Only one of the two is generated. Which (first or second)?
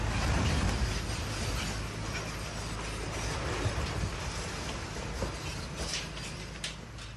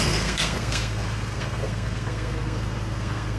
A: second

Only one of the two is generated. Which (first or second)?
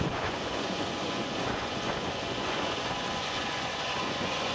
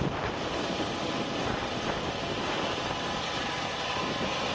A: first